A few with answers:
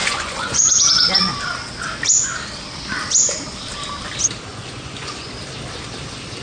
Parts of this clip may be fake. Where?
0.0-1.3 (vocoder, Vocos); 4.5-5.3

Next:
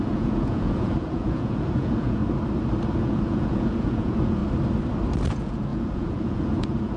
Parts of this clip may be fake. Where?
0.0-2.2 (vocoder, Vocos); 3.0-4.4; 5.3-7.0

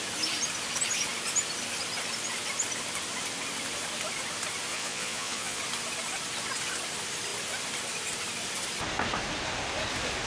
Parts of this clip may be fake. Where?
4.7-5.6 (vocoder, Vocos)